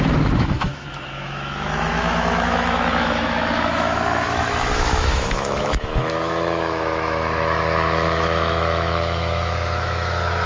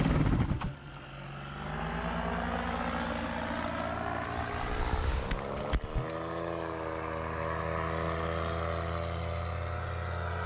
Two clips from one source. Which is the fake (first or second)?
first